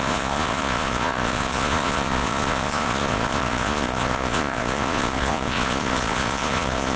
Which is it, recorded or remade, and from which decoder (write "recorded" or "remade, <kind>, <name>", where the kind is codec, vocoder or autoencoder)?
remade, vocoder, Vocos